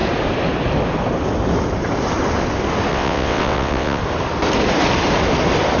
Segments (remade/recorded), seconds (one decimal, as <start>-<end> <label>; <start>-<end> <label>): 0.0-2.9 recorded; 2.9-4.0 remade; 4.0-5.8 recorded